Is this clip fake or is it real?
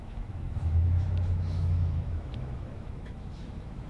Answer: fake